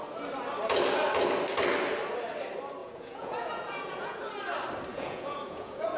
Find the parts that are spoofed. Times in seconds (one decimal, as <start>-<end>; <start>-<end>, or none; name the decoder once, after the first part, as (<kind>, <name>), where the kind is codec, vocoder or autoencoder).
2.8-4.2 (vocoder, Vocos); 4.9-6.0